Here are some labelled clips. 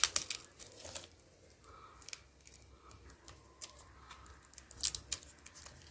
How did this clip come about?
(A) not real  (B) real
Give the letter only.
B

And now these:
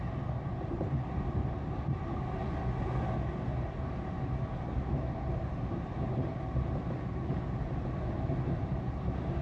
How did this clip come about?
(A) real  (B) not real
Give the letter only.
A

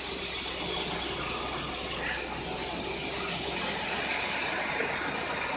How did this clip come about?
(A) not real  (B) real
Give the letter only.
B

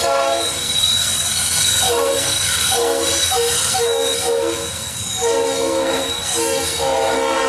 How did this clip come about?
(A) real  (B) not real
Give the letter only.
B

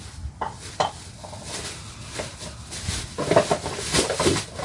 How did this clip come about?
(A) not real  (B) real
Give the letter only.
B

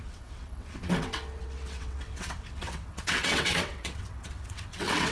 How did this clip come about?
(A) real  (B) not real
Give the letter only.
B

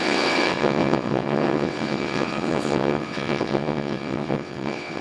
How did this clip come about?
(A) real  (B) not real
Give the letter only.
B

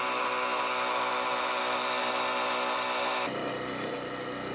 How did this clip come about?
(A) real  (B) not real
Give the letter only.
A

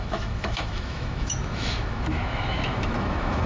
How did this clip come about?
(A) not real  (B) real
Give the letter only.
A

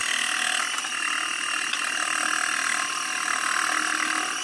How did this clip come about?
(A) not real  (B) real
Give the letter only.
B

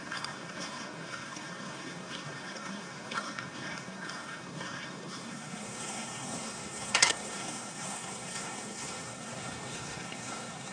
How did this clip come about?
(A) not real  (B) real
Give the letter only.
A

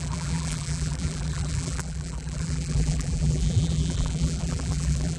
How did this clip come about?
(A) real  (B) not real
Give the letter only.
B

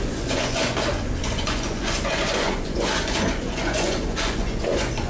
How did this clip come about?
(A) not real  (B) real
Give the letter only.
A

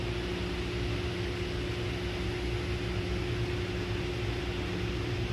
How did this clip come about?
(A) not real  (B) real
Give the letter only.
B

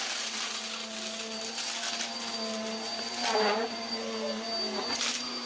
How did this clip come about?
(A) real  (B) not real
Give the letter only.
A